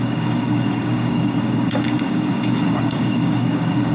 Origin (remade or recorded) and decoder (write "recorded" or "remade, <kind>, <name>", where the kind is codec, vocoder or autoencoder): remade, codec, DAC